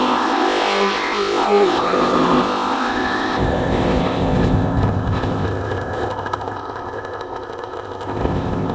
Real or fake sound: fake